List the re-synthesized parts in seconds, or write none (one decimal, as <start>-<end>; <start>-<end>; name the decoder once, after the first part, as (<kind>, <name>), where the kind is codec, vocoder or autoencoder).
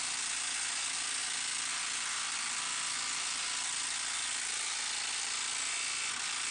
none